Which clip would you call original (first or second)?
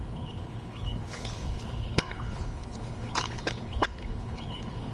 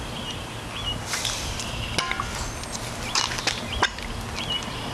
second